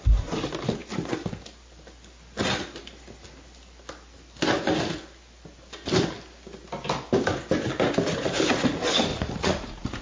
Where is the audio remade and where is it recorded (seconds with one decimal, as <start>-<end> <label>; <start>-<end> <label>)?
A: 0.0-9.1 recorded; 9.1-10.0 remade